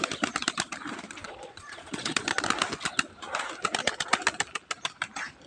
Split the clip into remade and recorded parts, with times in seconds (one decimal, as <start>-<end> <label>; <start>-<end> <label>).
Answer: 0.0-1.2 recorded; 1.2-2.3 remade; 2.3-5.5 recorded